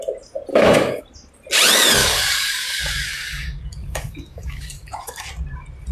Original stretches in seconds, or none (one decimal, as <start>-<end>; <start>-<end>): 0.0-0.5; 1.0-2.0; 5.3-5.9

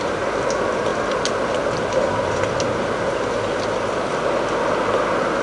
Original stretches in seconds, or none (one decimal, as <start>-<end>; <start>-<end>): 0.0-5.4

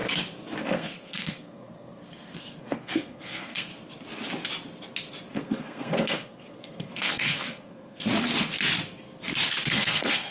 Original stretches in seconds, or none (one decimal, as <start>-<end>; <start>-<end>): 0.0-0.6; 3.7-5.3; 8.1-9.7

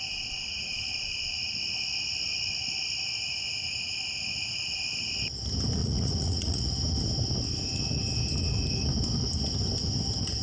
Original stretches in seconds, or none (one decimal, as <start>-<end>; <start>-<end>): 0.0-5.8; 6.7-10.4

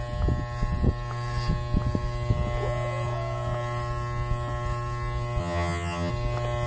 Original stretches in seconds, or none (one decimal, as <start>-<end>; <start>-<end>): 0.0-5.4; 6.1-6.7

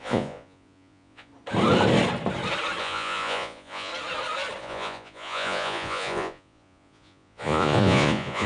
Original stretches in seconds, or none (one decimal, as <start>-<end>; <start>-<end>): 1.3-2.8; 3.9-4.6

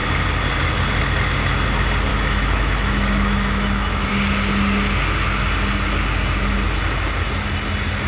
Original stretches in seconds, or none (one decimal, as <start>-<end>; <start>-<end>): 0.0-2.1; 4.1-8.1

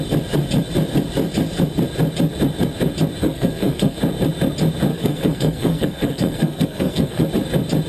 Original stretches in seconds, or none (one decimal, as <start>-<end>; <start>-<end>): 0.0-3.2; 4.0-4.9; 7.3-7.9